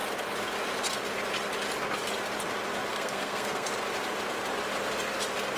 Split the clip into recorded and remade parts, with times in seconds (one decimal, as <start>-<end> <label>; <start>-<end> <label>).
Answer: 0.0-2.9 recorded; 2.9-3.7 remade; 3.7-5.6 recorded